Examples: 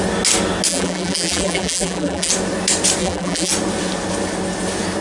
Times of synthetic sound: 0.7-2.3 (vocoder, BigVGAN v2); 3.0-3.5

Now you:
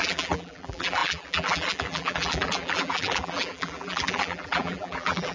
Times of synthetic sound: 0.0-5.3 (vocoder, BigVGAN v2)

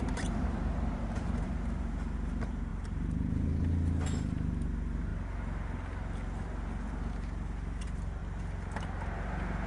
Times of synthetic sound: 0.0-5.1 (vocoder, BigVGAN v2); 7.8-8.2

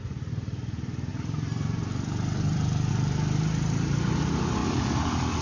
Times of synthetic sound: 0.0-5.4 (vocoder, BigVGAN v2)

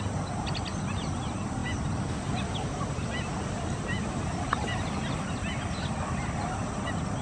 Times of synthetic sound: none

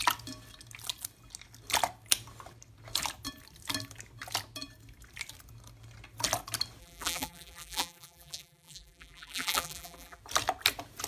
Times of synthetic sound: 6.8-10.2 (vocoder, BigVGAN v2)